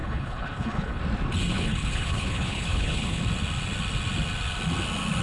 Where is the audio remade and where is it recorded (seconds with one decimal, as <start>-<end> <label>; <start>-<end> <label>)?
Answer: 0.0-1.0 remade; 1.0-1.5 recorded; 1.5-3.2 remade; 3.2-5.2 recorded